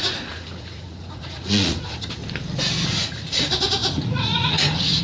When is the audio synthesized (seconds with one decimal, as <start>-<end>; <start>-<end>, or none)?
0.0-2.2; 2.9-5.0